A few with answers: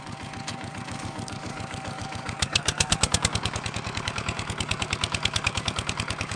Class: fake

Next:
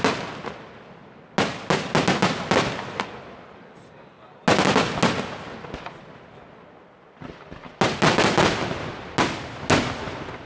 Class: real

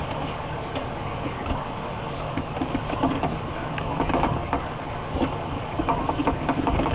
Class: fake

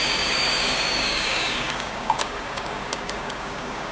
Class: fake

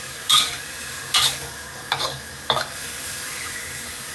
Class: fake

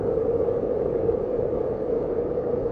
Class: fake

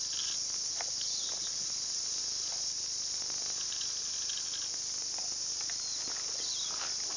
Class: real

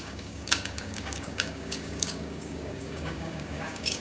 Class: fake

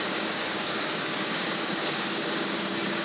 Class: fake